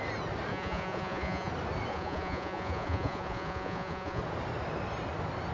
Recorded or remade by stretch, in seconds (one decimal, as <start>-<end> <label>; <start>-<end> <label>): 0.0-0.5 recorded; 0.5-1.5 remade; 1.5-1.9 recorded; 1.9-4.2 remade; 4.2-5.5 recorded